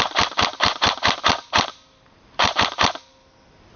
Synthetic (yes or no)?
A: no